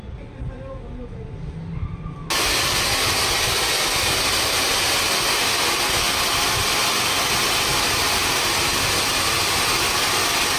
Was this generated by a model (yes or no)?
no